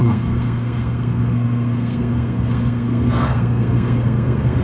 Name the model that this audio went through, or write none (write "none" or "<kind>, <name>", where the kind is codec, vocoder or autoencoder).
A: codec, SNAC